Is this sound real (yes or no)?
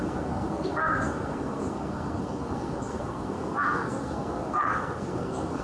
no